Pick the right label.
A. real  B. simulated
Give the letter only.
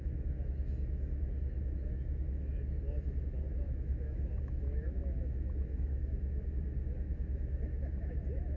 B